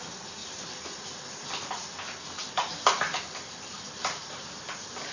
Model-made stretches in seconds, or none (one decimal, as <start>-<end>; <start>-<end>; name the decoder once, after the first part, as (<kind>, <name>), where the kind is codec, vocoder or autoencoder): 0.4-1.0 (vocoder, BigVGAN v2)